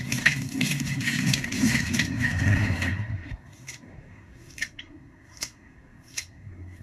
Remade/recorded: remade